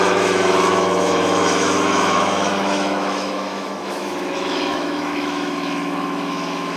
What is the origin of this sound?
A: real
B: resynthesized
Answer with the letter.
B